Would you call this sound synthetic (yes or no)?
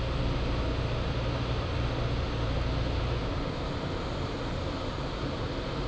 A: no